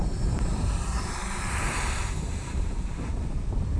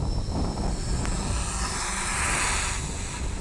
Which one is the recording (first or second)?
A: second